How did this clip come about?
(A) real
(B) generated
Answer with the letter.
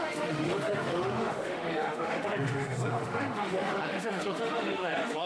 B